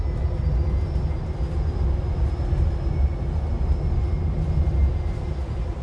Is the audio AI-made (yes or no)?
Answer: no